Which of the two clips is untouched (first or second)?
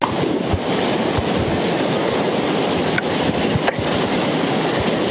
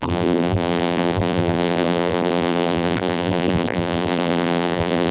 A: first